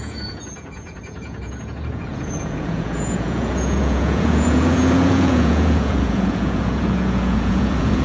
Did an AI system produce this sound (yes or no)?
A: yes